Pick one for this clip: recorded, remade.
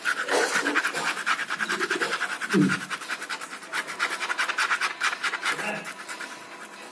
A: recorded